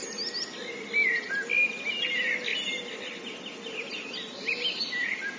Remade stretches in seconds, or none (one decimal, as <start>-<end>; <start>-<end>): none